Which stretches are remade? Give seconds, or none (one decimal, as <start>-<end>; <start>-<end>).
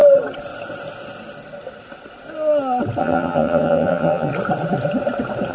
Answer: 3.0-4.3